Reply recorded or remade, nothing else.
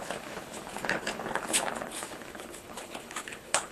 remade